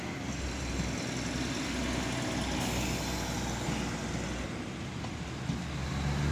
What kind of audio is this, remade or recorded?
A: recorded